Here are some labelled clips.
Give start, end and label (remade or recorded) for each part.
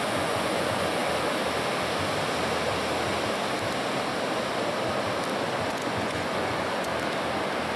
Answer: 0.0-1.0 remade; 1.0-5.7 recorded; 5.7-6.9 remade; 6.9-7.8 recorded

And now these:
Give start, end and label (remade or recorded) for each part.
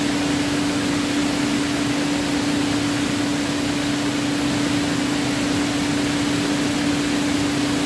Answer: 0.0-7.9 recorded